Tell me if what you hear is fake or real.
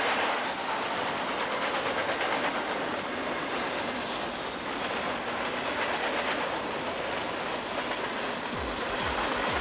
real